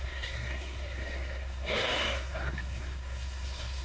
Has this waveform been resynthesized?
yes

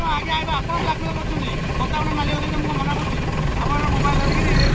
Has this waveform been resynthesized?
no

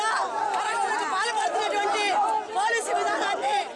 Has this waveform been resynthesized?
no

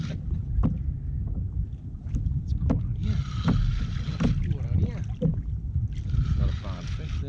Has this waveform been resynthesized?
no